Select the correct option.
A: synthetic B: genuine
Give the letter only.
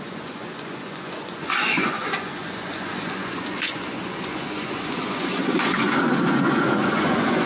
A